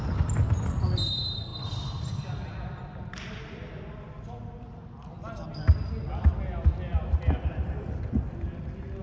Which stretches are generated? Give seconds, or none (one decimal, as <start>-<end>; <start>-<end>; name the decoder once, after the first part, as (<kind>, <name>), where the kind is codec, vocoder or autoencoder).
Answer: 1.5-2.5 (vocoder, BigVGAN v2); 6.9-9.0